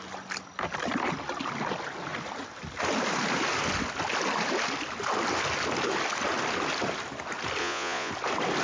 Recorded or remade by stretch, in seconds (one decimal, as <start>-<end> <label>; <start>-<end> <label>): 0.0-7.6 recorded; 7.6-8.1 remade; 8.1-8.6 recorded